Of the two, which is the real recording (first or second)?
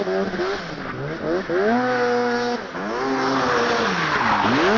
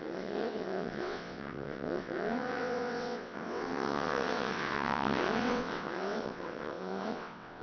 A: first